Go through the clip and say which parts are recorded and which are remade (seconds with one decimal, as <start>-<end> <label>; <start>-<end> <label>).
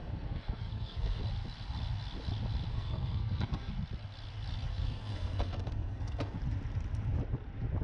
0.0-1.2 remade; 1.2-2.7 recorded; 2.7-3.7 remade; 3.7-4.7 recorded; 4.7-6.4 remade; 6.4-7.8 recorded